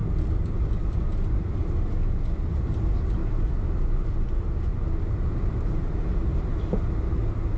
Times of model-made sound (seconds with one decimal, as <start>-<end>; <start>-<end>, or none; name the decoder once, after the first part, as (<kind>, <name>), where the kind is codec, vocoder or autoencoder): 0.0-1.7 (vocoder, BigVGAN v2); 3.2-5.0; 6.3-7.1